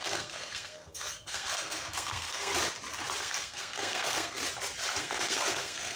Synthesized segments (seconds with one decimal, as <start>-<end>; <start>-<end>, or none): 0.0-2.5; 3.2-4.4; 5.0-6.0